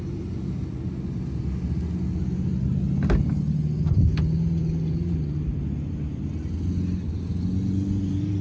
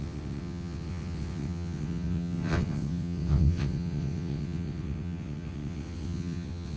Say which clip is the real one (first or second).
first